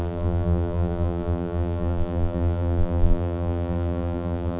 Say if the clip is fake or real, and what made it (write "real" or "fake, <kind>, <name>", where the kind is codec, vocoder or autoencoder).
fake, vocoder, BigVGAN v2